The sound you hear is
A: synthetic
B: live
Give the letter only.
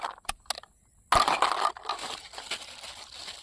B